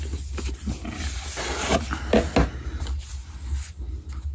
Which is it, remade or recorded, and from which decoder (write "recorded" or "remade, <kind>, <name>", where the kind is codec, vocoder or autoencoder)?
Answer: recorded